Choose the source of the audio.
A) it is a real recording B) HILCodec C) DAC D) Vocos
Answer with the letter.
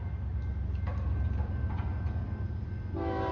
A